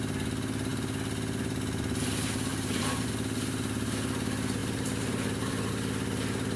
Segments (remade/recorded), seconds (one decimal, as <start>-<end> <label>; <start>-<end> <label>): 0.0-2.5 recorded; 2.5-3.1 remade; 3.1-4.6 recorded; 4.6-5.7 remade; 5.7-6.6 recorded